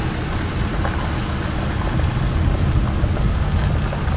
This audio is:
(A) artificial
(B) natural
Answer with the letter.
B